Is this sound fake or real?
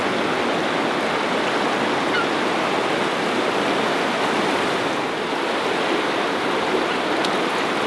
real